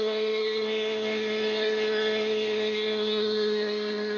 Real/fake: fake